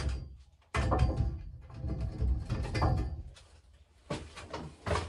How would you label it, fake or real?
real